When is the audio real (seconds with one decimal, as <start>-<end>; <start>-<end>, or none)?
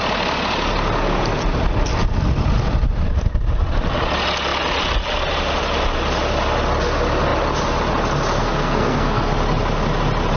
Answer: 0.0-8.4; 9.3-10.4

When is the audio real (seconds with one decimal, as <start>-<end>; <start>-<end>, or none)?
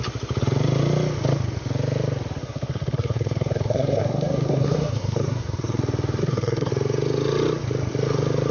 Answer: 0.0-2.4; 5.8-6.2; 6.7-8.5